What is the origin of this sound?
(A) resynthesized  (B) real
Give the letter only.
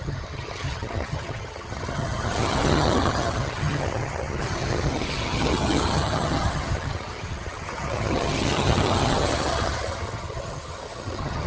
A